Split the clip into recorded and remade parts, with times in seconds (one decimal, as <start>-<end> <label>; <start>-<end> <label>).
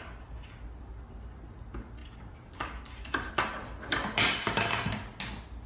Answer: 0.0-2.0 recorded; 2.0-3.3 remade; 3.3-5.7 recorded